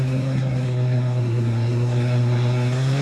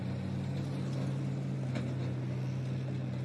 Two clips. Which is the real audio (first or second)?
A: second